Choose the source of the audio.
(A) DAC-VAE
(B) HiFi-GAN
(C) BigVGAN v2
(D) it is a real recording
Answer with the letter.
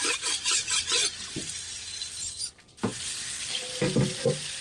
D